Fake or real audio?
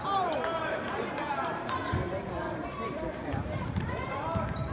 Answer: fake